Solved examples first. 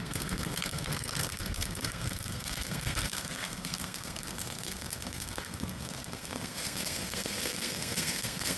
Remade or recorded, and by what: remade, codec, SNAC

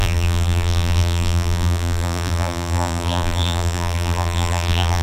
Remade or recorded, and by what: remade, vocoder, BigVGAN v2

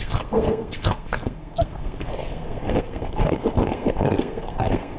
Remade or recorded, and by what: remade, codec, SNAC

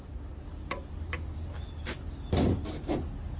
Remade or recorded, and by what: recorded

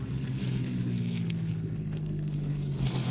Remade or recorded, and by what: remade, codec, SNAC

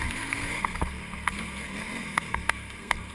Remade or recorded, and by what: remade, codec, SNAC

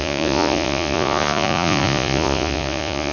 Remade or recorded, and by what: remade, vocoder, Vocos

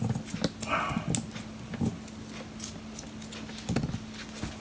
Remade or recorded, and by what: recorded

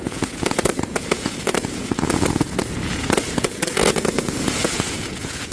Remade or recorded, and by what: remade, vocoder, Vocos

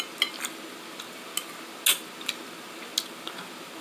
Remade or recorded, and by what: recorded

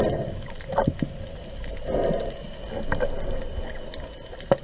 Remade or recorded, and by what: recorded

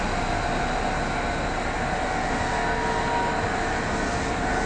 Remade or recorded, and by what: recorded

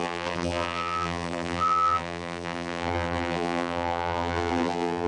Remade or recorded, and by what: remade, vocoder, BigVGAN v2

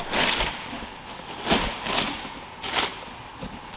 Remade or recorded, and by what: recorded